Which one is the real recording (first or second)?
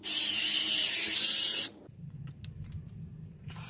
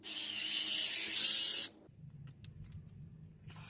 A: second